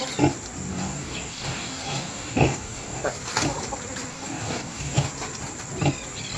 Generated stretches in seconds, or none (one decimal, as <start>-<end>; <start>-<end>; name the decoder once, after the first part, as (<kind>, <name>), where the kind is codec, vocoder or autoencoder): 0.7-3.0 (codec, DAC); 4.1-5.1